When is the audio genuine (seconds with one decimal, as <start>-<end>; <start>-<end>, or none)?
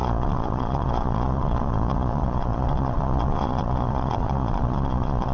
none